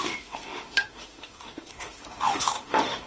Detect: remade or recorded remade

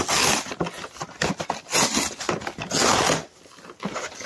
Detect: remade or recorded recorded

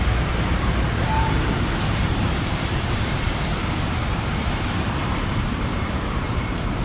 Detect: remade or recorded remade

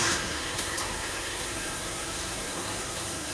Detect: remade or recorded remade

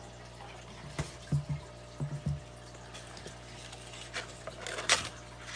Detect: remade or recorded recorded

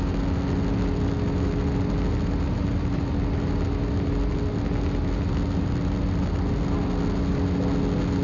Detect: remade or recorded recorded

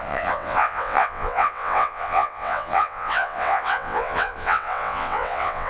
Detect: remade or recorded remade